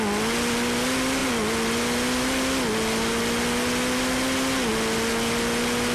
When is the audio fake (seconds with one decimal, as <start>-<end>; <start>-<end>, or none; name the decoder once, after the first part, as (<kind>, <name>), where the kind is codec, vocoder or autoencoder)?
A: none